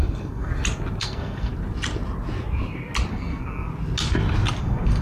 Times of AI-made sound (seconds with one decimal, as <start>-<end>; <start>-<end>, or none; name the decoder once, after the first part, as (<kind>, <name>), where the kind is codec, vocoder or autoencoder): 0.0-0.5 (codec, SNAC); 1.0-1.5; 3.1-3.7; 4.6-5.0